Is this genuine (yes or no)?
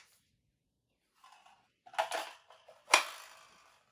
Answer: yes